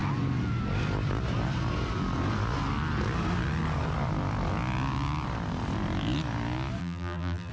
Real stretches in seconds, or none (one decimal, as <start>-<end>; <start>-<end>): 0.0-6.8